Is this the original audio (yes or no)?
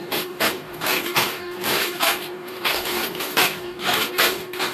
no